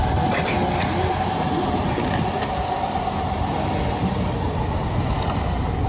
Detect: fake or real real